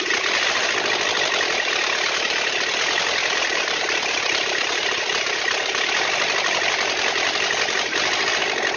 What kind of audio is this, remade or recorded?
recorded